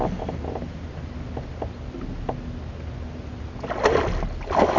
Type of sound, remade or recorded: recorded